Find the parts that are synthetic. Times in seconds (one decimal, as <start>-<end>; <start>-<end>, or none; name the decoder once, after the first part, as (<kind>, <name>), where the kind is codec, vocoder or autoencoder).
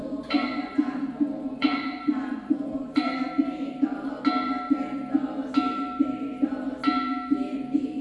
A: 0.0-3.3 (vocoder, Vocos)